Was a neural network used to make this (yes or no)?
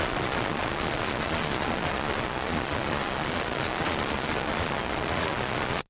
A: yes